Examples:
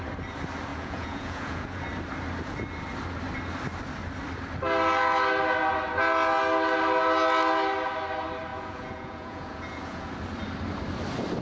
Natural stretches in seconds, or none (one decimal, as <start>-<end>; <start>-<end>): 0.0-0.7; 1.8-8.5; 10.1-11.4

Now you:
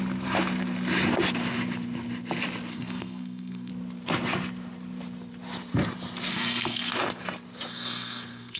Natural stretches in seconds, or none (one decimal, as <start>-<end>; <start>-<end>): 0.0-2.7; 3.7-6.3; 6.9-7.7

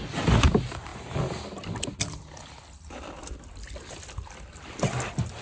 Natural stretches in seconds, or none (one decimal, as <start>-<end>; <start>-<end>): 0.0-5.4

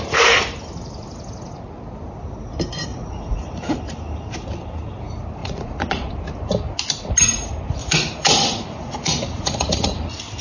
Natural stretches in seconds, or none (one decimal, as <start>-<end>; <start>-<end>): 0.0-2.9; 3.7-5.4; 6.1-7.8; 10.0-10.4

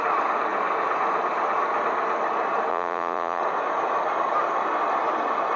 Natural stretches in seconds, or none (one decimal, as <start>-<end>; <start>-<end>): 0.0-2.7; 3.4-5.6